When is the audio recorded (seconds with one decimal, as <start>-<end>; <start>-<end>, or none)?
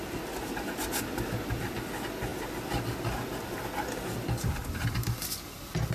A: 0.0-5.9